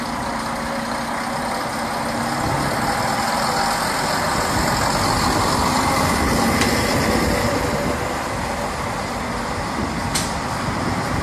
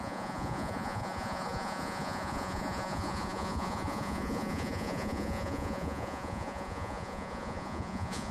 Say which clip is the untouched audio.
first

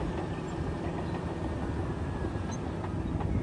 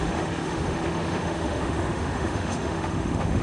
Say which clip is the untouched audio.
first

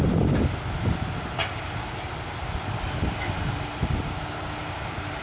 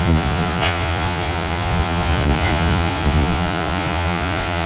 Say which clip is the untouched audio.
first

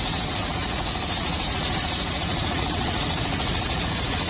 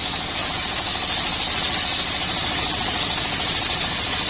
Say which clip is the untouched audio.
second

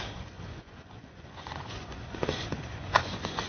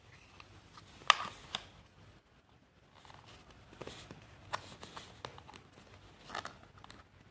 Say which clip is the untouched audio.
second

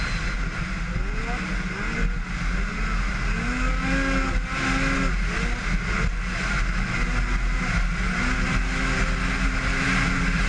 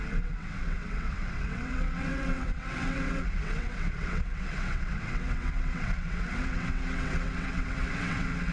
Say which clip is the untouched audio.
first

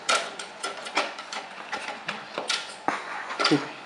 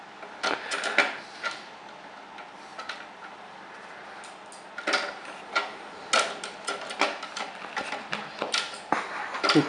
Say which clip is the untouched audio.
second